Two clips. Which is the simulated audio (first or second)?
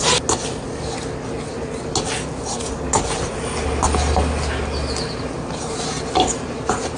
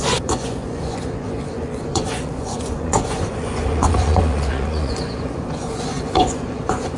second